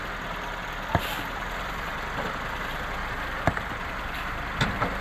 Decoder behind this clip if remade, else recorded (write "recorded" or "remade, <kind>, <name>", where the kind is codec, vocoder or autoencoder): recorded